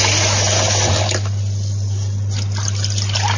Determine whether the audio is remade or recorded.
recorded